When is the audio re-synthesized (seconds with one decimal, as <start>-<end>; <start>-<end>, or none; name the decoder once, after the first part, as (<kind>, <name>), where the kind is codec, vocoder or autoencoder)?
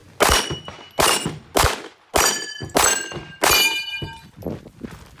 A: none